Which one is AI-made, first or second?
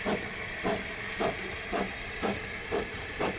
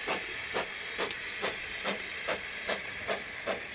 second